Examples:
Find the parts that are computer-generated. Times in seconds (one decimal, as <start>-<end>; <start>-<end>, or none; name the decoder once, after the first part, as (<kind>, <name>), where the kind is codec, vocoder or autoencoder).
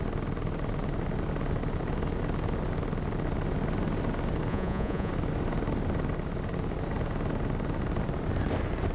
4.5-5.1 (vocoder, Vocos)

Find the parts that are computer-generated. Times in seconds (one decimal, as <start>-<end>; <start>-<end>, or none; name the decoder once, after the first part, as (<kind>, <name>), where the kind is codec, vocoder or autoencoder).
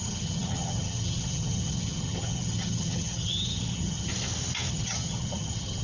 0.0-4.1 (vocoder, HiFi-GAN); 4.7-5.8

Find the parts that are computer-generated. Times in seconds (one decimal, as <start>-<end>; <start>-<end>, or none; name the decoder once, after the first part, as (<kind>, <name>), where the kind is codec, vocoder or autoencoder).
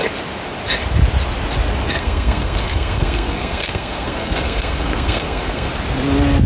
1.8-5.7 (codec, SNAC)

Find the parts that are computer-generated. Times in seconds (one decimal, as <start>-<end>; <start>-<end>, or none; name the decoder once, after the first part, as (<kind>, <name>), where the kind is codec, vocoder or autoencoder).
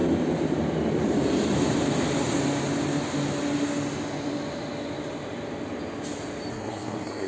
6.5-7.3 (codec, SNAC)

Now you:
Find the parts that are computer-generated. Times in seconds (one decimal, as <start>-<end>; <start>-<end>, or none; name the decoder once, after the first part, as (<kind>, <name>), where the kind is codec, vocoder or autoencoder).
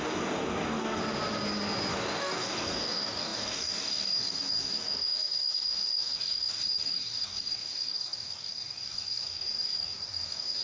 0.0-1.0 (codec, DAC); 1.9-10.6